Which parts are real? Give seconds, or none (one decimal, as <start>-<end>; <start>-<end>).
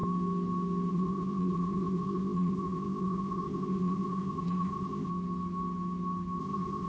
0.0-0.9; 5.1-6.4